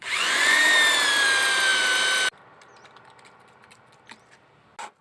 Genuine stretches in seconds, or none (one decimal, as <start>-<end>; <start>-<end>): 0.6-5.0